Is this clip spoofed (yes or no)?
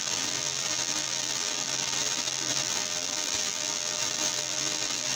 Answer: yes